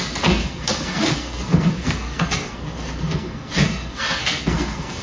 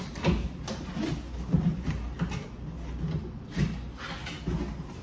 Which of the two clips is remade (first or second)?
first